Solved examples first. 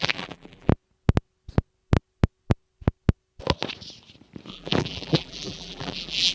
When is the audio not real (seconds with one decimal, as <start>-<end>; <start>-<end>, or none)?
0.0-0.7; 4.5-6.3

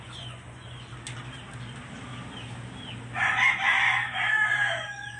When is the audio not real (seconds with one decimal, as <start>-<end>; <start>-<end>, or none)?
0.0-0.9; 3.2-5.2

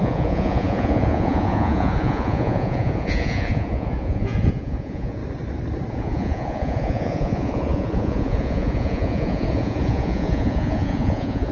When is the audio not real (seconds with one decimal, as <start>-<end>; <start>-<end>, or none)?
0.0-5.2; 5.9-11.5

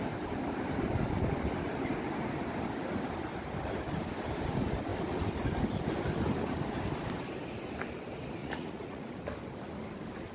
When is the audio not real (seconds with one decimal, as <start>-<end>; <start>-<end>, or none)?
8.4-9.1

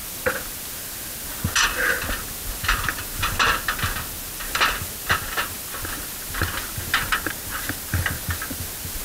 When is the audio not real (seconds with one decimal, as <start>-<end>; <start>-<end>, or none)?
none

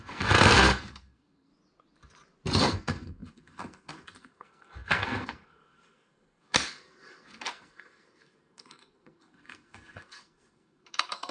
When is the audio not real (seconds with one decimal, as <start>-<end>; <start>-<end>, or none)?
0.0-1.5; 2.6-11.3

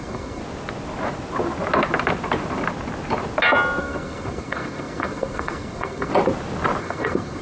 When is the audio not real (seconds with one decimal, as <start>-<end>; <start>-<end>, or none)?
0.0-0.4; 3.8-6.1; 6.8-7.4

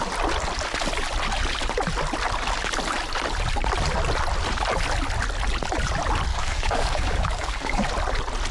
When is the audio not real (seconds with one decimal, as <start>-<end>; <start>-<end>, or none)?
6.3-7.9